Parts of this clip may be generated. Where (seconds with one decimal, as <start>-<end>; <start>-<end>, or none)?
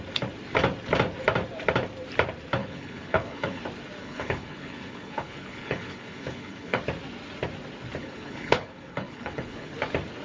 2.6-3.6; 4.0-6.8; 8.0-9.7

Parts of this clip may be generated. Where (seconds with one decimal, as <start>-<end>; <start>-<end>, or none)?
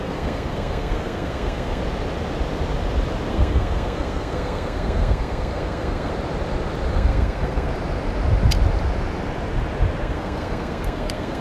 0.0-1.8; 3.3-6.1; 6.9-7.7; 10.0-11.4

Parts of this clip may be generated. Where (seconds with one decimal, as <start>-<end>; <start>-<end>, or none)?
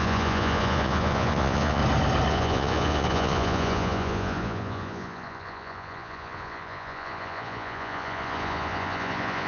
0.0-1.8; 2.3-9.5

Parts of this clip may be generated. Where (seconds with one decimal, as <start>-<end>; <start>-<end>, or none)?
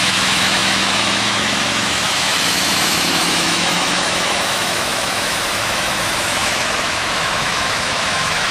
0.0-8.5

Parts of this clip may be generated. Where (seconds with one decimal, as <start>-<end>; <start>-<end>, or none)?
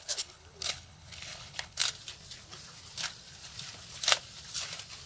0.0-1.8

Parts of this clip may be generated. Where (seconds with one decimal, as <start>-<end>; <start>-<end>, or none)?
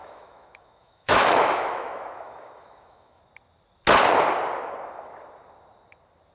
0.0-3.2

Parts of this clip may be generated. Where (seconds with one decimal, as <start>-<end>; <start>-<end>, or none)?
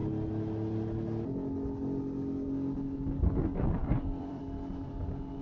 3.8-4.4